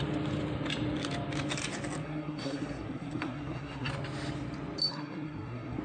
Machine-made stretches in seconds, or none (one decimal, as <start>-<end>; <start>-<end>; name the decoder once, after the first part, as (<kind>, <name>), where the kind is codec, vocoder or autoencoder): 2.0-3.9 (codec, SNAC); 4.9-5.8